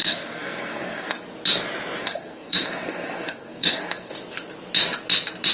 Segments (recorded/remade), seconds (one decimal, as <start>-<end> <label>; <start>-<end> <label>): 0.0-1.2 remade; 1.2-2.0 recorded; 2.0-4.1 remade; 4.1-5.5 recorded